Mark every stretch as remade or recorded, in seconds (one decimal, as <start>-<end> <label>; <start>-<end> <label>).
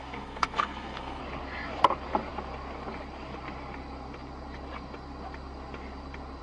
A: 0.0-1.2 remade; 1.2-6.4 recorded